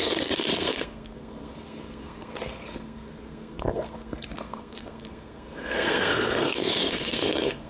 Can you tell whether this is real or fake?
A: fake